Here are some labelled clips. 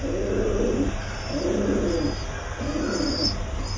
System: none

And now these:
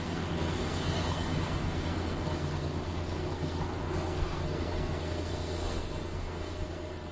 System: codec, SNAC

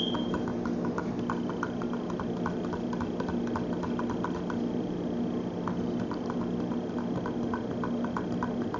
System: none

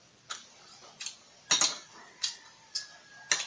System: none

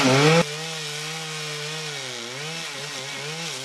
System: none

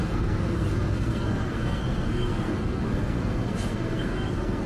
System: codec, SNAC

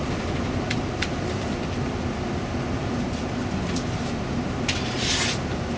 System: none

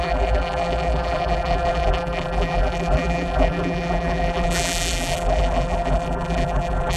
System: vocoder, BigVGAN v2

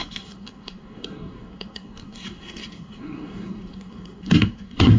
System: codec, SNAC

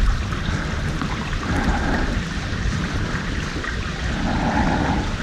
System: none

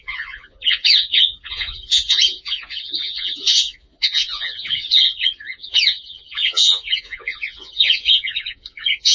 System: vocoder, Vocos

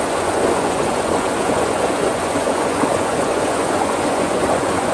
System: vocoder, Vocos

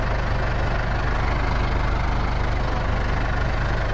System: none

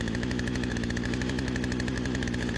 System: autoencoder, DAC-VAE